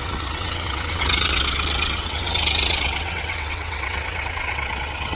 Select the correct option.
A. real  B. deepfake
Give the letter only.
B